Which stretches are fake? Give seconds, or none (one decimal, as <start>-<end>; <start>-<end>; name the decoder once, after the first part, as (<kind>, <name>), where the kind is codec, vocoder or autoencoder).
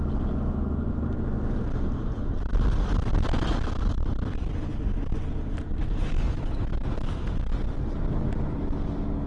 none